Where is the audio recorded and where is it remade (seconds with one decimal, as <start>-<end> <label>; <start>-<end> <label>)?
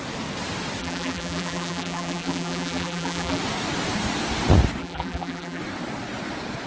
0.0-0.8 recorded; 0.8-3.4 remade; 3.4-4.8 recorded; 4.8-5.6 remade; 5.6-6.7 recorded